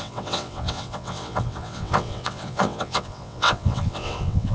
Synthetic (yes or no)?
yes